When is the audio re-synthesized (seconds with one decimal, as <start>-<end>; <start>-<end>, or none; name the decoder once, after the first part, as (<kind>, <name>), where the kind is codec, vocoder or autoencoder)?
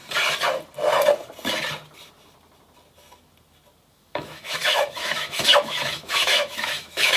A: 3.9-7.2 (autoencoder, DAC-VAE)